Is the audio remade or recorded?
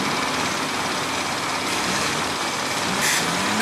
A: recorded